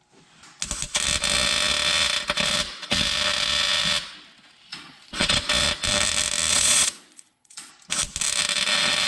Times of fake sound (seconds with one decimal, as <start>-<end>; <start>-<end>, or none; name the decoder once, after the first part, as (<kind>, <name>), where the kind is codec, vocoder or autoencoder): 4.7-5.5 (vocoder, Vocos); 6.5-7.7